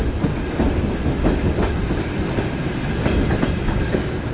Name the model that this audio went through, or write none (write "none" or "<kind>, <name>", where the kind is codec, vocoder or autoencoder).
none